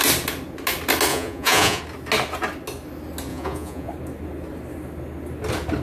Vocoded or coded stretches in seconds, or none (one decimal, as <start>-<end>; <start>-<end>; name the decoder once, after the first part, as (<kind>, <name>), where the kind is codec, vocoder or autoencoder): 1.1-1.8 (vocoder, Vocos); 3.3-3.9